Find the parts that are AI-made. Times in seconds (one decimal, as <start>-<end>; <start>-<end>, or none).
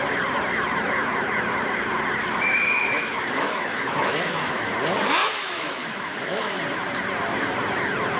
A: 2.2-4.7; 5.2-6.6